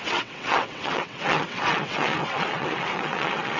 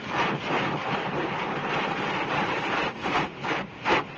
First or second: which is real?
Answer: second